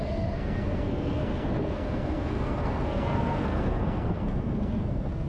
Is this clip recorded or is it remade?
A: remade